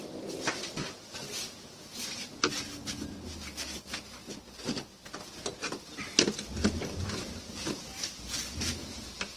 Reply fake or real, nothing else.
real